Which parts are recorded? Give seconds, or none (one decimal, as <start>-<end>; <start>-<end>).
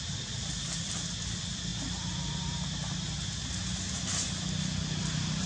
1.7-5.0